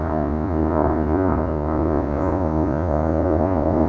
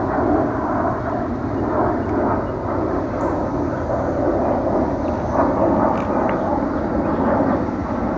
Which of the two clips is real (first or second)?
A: second